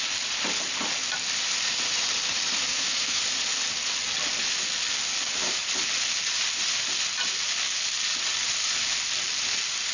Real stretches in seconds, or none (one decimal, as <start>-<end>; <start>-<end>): 0.0-2.7; 3.2-9.9